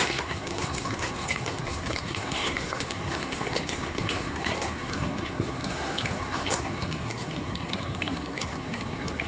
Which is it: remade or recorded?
remade